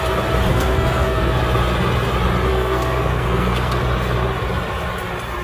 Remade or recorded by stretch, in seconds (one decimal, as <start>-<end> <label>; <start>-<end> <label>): 0.0-0.5 recorded; 0.5-1.4 remade; 1.4-2.5 recorded; 2.5-3.8 remade; 3.8-5.4 recorded